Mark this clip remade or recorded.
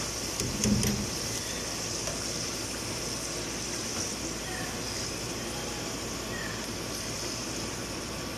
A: recorded